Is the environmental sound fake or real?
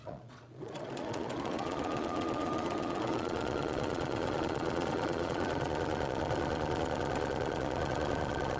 fake